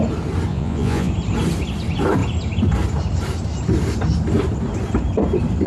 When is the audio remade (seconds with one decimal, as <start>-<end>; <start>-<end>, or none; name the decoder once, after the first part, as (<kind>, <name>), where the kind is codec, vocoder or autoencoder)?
0.5-1.1 (vocoder, Vocos)